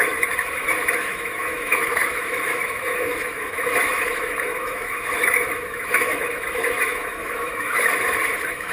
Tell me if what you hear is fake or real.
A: fake